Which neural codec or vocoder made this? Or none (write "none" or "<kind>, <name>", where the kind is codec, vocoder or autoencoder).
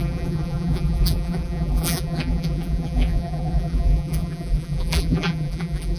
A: vocoder, BigVGAN v2